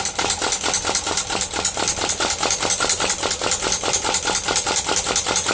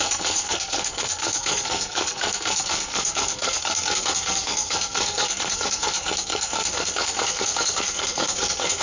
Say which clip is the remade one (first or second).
second